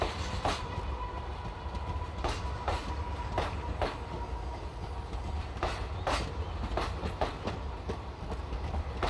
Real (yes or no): yes